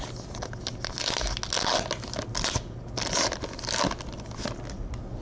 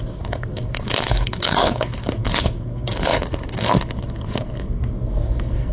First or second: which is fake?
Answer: second